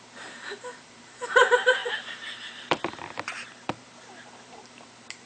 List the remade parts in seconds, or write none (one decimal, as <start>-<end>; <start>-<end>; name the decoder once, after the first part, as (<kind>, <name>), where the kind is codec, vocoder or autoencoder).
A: 0.0-5.3 (vocoder, BigVGAN v2)